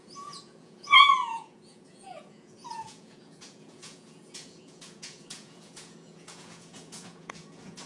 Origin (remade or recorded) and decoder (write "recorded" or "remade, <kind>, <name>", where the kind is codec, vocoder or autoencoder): remade, vocoder, Vocos